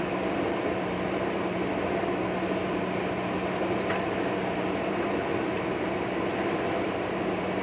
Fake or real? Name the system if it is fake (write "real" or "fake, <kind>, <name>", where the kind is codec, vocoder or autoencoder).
real